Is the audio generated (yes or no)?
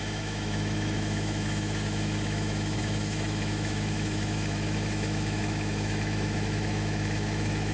yes